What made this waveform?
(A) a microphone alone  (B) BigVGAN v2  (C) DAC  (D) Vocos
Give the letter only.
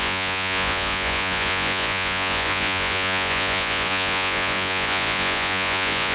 D